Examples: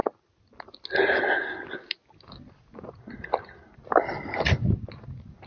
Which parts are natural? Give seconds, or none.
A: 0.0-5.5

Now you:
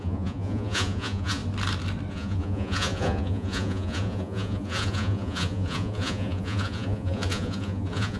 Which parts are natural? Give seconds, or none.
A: 1.4-2.1